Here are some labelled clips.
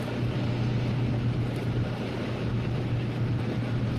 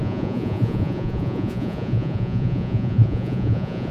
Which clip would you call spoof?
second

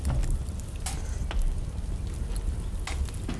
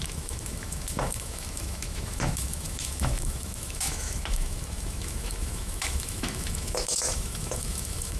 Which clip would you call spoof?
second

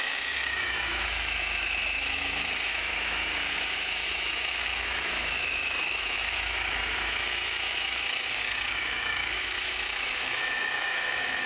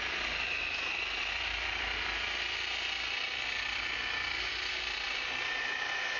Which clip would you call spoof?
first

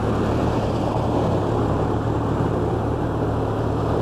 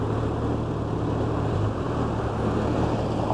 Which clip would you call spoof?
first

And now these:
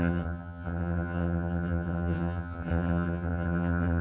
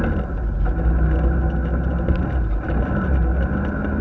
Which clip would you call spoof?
first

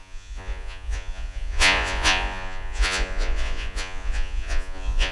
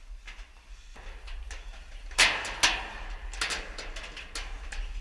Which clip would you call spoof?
first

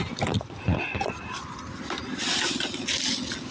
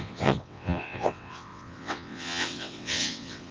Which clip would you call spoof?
second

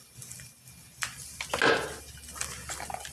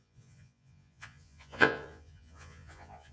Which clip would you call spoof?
second